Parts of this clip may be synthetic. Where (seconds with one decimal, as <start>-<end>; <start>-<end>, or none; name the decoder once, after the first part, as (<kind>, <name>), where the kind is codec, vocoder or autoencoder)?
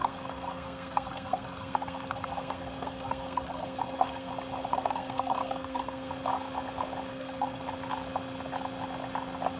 0.0-4.3 (codec, SNAC); 4.7-6.1; 7.1-7.6